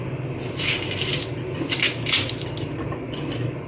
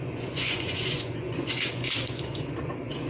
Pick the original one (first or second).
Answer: first